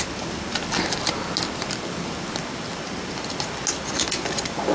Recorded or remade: recorded